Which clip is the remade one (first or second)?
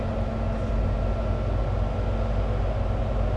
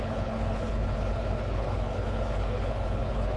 second